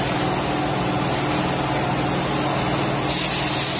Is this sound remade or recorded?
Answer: recorded